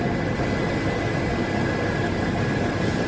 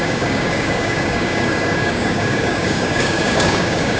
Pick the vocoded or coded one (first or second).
second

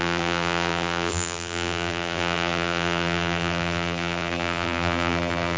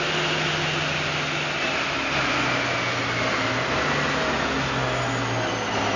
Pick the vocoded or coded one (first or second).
first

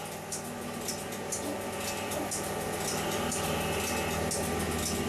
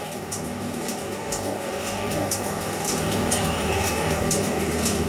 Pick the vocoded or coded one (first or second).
second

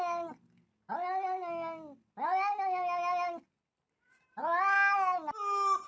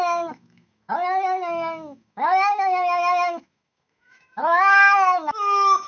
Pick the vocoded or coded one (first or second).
second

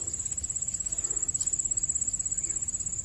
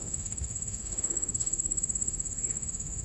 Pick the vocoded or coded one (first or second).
second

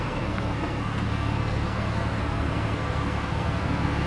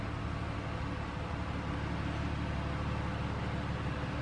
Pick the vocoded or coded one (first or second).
first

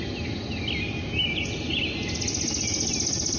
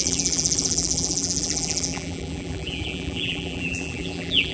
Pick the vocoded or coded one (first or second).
second